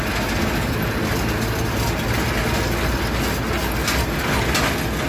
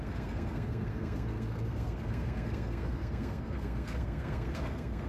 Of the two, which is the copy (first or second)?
second